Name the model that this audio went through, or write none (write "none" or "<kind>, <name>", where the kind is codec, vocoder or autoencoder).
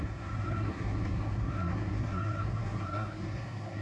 codec, SNAC